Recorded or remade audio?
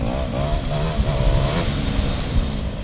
recorded